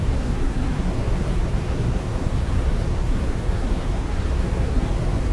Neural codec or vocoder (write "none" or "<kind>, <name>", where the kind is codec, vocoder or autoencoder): codec, SNAC